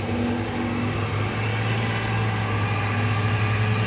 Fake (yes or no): no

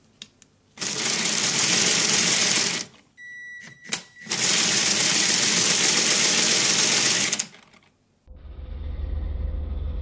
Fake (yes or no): no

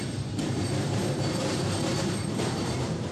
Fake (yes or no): yes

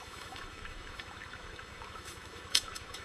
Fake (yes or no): yes